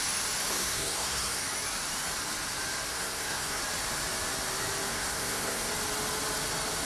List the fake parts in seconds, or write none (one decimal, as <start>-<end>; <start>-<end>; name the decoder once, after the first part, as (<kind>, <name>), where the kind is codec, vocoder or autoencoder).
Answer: 0.5-1.4 (codec, SNAC); 2.9-3.6; 4.9-5.7